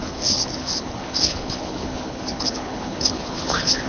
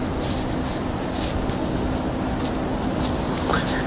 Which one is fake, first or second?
first